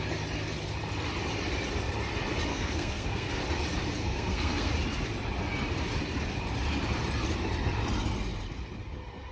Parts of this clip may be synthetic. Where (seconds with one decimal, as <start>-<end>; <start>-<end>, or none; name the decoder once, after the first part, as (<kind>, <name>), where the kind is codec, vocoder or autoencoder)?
2.5-3.4 (codec, SNAC); 4.0-4.7

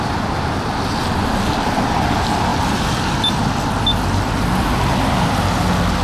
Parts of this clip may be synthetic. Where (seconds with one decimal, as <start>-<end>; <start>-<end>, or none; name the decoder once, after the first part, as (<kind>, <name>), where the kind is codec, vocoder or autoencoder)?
none

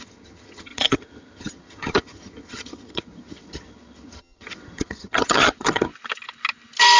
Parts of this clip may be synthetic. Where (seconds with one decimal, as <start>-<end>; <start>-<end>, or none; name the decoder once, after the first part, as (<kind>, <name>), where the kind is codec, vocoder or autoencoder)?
0.0-5.9 (vocoder, HiFi-GAN)

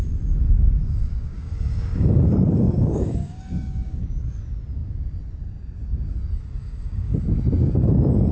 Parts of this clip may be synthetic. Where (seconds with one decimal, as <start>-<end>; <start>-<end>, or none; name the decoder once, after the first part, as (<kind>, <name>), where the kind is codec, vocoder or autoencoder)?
0.8-4.0 (codec, DAC); 6.6-7.2

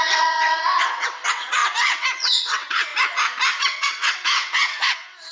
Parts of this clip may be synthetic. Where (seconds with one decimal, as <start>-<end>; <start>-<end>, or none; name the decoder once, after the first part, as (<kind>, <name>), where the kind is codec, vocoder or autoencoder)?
0.0-2.9 (vocoder, WaveNeXt); 3.6-5.3

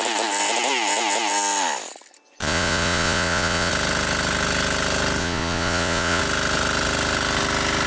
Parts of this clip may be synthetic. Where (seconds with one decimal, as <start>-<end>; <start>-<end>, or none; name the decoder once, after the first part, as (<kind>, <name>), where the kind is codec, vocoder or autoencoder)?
2.4-3.7 (vocoder, Vocos); 5.2-6.2

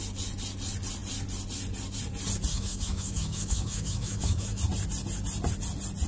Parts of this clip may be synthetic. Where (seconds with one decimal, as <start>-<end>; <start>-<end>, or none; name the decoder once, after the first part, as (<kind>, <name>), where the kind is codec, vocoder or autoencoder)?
2.5-4.6 (autoencoder, DAC-VAE)